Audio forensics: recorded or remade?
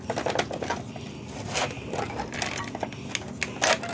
recorded